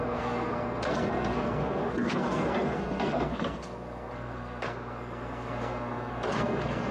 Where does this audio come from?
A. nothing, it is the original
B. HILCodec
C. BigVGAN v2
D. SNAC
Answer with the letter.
D